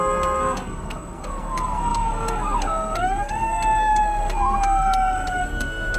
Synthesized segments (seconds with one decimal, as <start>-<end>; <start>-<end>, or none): 0.0-6.0